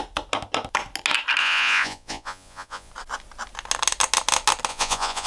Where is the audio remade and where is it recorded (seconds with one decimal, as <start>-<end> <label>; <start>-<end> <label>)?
0.0-1.4 recorded; 1.4-2.9 remade; 2.9-4.7 recorded; 4.7-5.3 remade